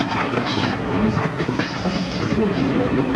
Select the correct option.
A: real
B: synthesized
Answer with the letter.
B